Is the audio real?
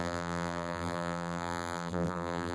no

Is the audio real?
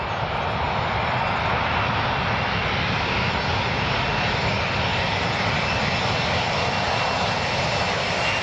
yes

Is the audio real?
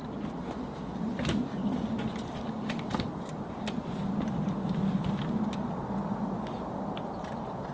no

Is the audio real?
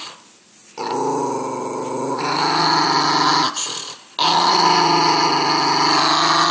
yes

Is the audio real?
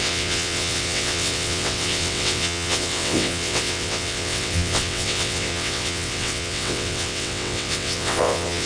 no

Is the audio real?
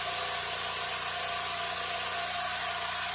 yes